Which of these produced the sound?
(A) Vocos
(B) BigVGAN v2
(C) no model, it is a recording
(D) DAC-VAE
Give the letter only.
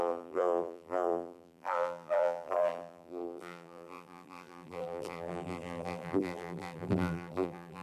B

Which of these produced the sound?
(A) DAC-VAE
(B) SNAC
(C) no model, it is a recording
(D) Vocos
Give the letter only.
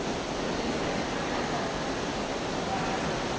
C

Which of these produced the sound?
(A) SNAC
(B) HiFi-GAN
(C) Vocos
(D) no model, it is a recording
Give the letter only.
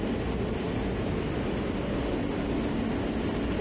D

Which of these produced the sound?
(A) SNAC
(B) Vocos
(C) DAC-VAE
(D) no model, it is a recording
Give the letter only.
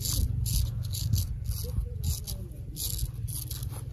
D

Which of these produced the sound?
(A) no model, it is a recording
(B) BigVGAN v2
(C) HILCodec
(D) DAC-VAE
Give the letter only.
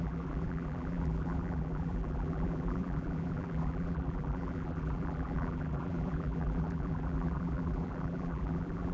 B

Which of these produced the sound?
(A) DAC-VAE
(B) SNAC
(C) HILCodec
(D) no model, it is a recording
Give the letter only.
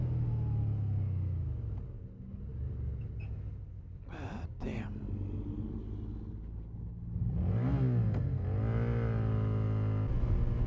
D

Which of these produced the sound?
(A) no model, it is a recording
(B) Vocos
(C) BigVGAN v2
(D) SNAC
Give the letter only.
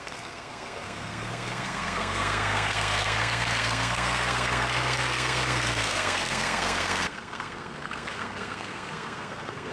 D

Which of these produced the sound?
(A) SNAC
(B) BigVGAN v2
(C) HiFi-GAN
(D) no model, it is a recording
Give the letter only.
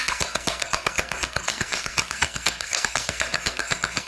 A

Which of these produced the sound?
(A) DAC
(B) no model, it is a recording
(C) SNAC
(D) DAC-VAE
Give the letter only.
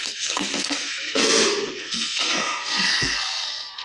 C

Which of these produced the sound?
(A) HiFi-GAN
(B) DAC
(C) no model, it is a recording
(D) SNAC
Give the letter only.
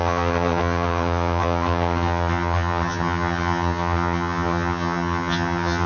A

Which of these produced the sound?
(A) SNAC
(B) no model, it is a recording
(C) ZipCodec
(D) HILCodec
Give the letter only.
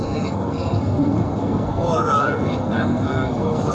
A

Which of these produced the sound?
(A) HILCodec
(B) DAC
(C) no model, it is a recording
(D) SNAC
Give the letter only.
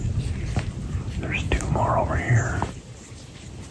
C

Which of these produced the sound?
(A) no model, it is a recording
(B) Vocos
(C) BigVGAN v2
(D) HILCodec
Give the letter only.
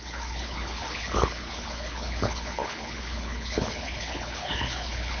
D